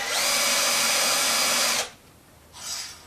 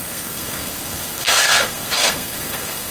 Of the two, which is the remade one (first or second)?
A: second